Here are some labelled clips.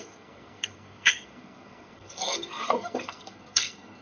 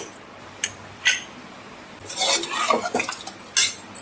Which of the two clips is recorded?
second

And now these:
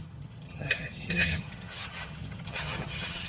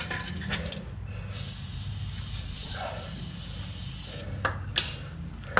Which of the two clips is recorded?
second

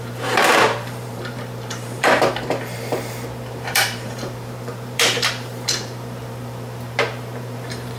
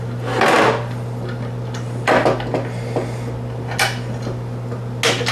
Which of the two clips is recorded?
second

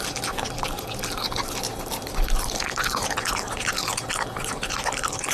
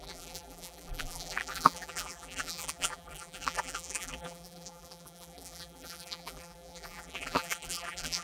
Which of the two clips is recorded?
first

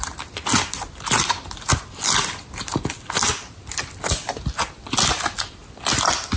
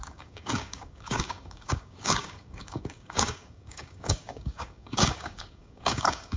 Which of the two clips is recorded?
first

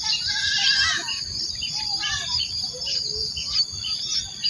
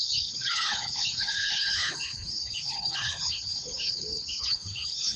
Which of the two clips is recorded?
first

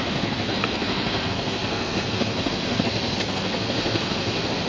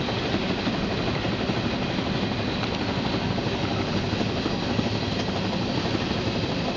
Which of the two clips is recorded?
second